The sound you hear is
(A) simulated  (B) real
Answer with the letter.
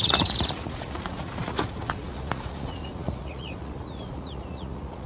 A